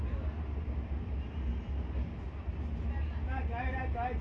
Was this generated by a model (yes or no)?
no